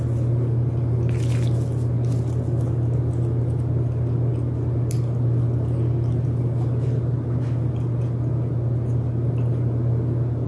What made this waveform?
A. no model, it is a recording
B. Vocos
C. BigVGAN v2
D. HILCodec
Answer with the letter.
A